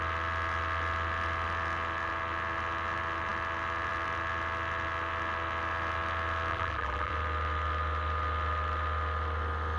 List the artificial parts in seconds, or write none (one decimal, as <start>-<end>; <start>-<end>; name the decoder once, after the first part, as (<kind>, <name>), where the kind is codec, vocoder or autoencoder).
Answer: 6.5-7.1 (vocoder, BigVGAN v2)